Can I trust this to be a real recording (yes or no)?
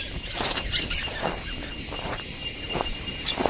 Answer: no